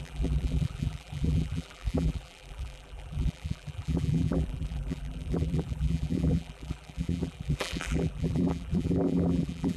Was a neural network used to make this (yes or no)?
yes